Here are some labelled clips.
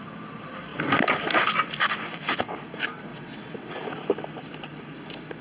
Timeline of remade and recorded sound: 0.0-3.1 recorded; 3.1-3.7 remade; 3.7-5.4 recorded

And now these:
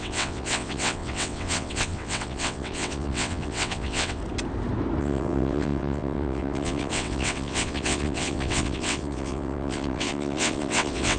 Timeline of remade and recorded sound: 0.0-4.2 remade; 4.2-5.0 recorded; 5.0-11.2 remade

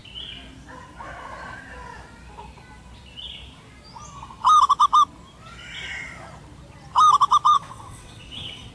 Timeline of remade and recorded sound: 0.0-7.5 recorded; 7.5-8.7 remade

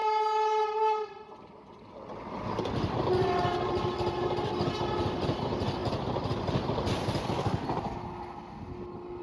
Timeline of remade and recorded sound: 0.0-9.2 recorded

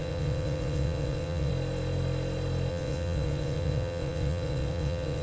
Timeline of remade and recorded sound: 0.0-1.5 remade; 1.5-2.7 recorded; 2.7-5.2 remade

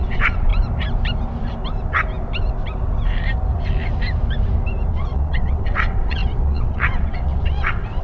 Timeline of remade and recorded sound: 0.0-0.5 remade; 0.5-4.9 recorded; 4.9-8.0 remade

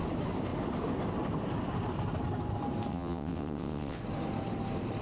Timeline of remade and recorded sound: 0.0-2.9 recorded; 2.9-4.0 remade; 4.0-5.0 recorded